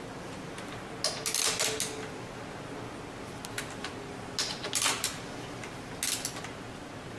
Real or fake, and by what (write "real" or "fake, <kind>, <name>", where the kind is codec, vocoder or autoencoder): real